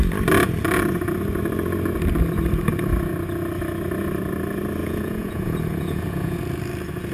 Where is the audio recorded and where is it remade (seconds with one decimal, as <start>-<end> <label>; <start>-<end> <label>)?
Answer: 0.0-4.8 recorded; 4.8-6.4 remade; 6.4-7.1 recorded